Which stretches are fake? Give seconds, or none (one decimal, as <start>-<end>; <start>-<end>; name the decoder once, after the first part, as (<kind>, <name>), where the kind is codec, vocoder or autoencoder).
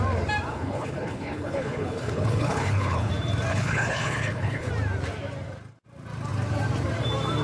0.5-3.1 (codec, HILCodec); 3.5-4.7